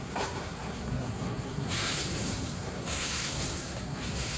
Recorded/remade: remade